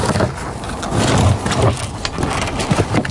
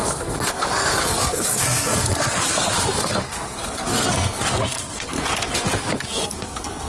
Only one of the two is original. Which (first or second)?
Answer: first